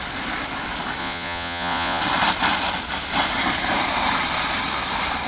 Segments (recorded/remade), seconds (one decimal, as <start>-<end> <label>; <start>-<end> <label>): 0.0-1.0 recorded; 1.0-2.0 remade; 2.0-5.3 recorded